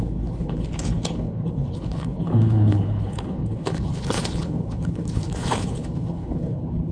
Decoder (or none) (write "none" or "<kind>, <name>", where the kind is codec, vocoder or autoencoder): codec, HILCodec